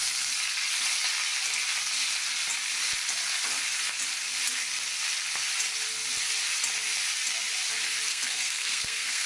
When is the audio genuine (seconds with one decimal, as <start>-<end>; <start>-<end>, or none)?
0.0-8.1